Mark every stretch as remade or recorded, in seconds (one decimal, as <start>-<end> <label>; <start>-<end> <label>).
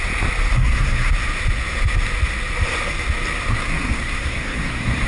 0.0-0.5 recorded; 0.5-1.1 remade; 1.1-3.5 recorded; 3.5-5.1 remade